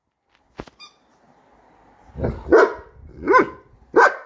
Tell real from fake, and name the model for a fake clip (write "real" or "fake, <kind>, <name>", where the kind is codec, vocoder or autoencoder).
real